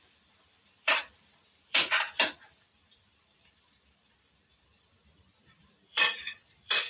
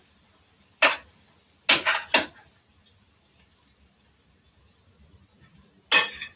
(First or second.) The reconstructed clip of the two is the first